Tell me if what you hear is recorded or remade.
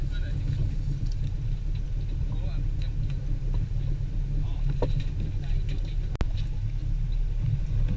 recorded